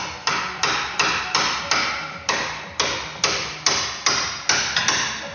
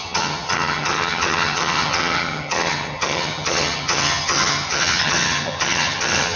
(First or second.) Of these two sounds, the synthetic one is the second